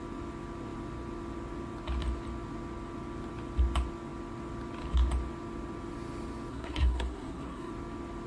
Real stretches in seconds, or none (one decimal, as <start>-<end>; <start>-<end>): 0.0-6.5; 7.7-8.3